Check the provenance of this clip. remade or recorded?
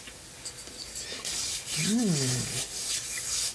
recorded